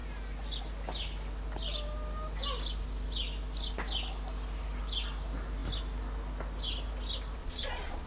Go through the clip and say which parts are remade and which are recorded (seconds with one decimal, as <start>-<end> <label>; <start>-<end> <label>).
0.0-7.4 recorded; 7.4-8.1 remade